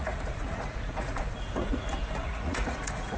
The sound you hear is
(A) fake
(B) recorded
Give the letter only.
A